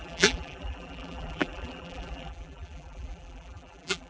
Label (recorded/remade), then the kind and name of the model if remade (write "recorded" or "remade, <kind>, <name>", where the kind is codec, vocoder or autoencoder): remade, vocoder, BigVGAN v2